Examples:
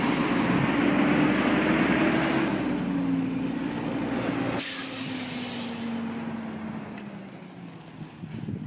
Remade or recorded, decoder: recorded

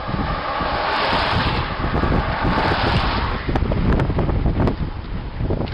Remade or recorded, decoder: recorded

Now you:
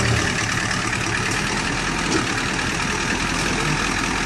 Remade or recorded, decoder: recorded